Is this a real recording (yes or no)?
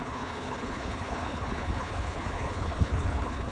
no